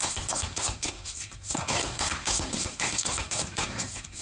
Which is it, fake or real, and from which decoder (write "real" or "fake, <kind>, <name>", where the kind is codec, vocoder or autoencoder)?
fake, codec, SNAC